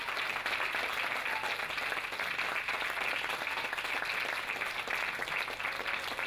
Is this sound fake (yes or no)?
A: no